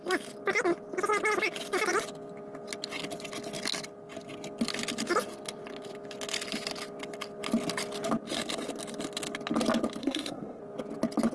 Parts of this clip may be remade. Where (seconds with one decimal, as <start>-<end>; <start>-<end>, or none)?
10.0-10.6